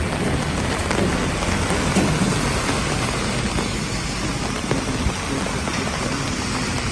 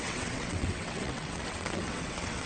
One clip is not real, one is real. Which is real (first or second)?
first